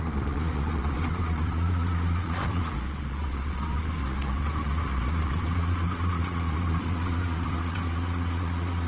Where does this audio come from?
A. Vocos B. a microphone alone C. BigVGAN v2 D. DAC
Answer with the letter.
A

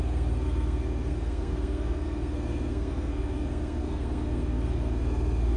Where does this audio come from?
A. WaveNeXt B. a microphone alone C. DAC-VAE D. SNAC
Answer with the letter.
D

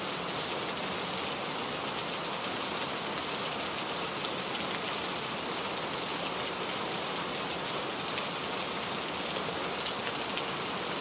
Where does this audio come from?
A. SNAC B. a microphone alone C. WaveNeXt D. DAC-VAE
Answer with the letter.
B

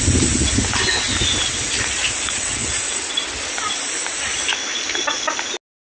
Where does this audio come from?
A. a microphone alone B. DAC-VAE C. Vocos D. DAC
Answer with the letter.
A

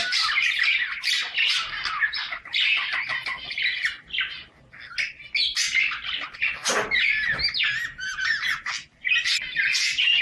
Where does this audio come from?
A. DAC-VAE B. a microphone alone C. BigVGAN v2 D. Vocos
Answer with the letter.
B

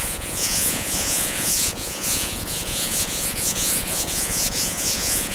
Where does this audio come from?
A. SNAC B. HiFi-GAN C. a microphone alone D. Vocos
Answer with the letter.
D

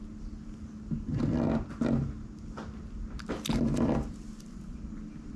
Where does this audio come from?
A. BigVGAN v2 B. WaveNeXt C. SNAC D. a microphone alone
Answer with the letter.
D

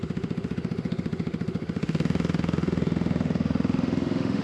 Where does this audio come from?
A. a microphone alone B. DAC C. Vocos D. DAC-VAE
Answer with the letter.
D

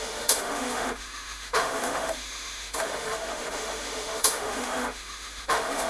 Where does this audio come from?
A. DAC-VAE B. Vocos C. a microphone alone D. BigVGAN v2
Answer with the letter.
A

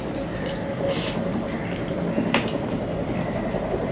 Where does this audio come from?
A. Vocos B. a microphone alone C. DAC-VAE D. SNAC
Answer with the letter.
B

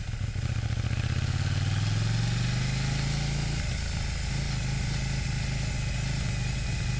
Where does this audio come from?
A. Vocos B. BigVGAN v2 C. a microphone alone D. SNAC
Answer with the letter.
C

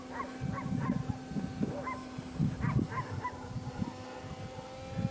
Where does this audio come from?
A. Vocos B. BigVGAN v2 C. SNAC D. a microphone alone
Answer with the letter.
D